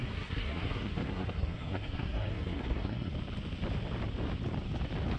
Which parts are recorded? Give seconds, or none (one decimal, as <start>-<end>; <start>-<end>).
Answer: 3.1-5.2